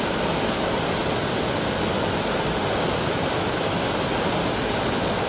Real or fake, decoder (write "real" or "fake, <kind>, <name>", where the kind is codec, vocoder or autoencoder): real